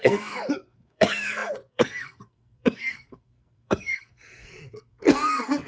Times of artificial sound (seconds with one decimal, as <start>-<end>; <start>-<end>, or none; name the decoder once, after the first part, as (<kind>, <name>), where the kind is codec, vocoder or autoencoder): 0.0-5.7 (codec, SNAC)